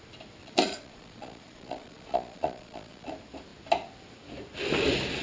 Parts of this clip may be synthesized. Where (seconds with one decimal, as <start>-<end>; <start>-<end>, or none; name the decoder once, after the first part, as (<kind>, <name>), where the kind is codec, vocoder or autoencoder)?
0.4-3.1 (vocoder, Vocos)